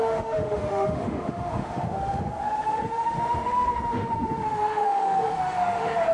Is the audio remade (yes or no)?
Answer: yes